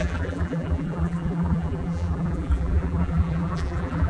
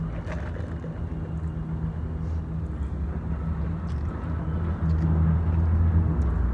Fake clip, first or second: first